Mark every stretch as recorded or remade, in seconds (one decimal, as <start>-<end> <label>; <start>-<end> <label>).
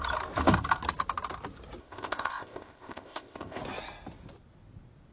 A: 0.0-1.8 recorded; 1.8-3.6 remade; 3.6-5.1 recorded